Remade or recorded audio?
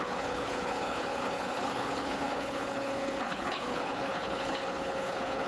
remade